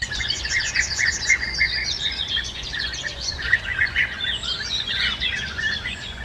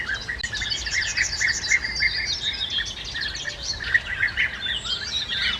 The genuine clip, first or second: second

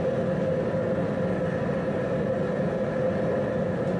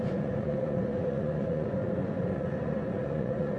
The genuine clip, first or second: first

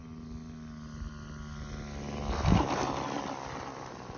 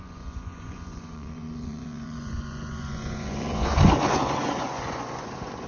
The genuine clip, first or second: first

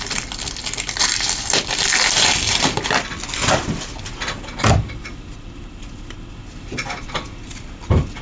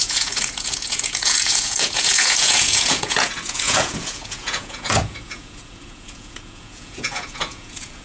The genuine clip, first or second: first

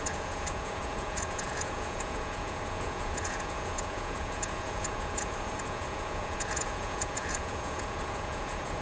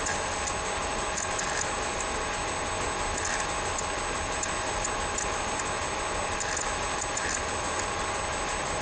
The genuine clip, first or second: second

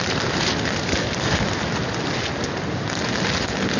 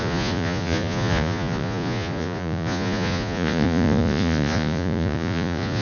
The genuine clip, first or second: first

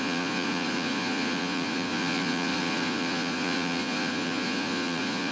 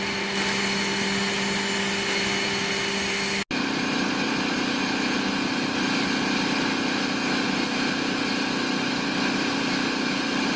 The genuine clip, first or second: second